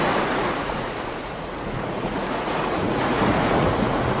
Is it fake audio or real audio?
fake